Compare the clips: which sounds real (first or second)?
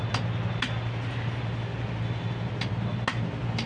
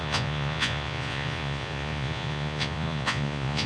first